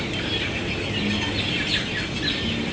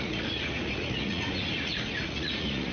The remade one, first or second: second